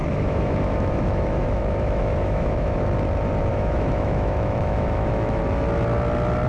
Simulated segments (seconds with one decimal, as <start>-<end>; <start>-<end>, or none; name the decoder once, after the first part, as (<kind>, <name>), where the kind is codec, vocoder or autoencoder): 0.0-2.8 (autoencoder, DAC-VAE); 3.5-5.4